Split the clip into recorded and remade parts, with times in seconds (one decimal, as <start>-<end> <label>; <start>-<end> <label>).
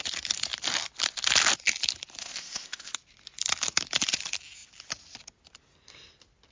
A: 0.0-2.2 recorded; 2.2-2.9 remade; 2.9-6.5 recorded